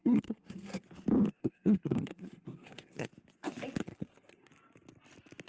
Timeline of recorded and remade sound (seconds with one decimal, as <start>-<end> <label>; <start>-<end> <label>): 0.0-0.8 remade; 0.8-1.4 recorded; 1.4-3.1 remade; 3.1-3.8 recorded; 3.8-4.5 remade; 4.5-5.5 recorded